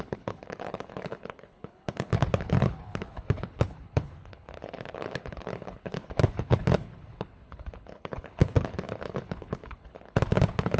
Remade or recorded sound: remade